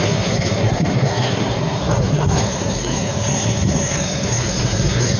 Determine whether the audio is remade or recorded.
remade